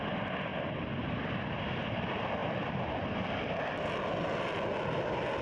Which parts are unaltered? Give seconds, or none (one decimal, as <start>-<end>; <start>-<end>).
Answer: 0.0-5.4